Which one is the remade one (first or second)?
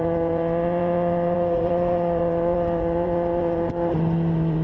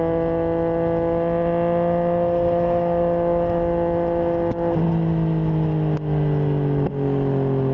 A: first